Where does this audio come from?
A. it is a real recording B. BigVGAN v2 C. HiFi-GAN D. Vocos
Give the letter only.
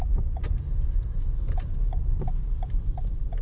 B